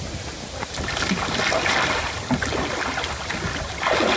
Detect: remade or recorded recorded